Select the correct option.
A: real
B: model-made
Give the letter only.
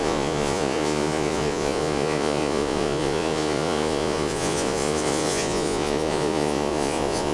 B